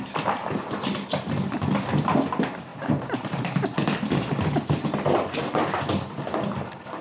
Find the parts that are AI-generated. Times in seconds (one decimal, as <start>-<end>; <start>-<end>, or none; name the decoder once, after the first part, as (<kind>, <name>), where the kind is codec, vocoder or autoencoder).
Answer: none